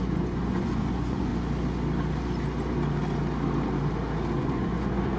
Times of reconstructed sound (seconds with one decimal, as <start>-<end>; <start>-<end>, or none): 0.0-1.3; 4.4-5.2